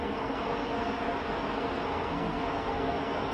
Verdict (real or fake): fake